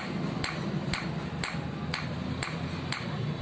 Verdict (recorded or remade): recorded